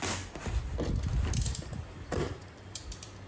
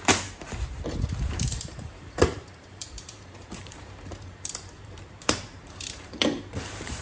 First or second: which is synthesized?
second